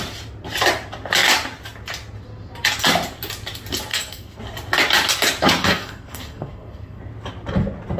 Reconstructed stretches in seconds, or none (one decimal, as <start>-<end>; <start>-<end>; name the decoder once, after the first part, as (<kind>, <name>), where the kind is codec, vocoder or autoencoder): 3.9-4.4 (codec, SNAC); 5.6-7.0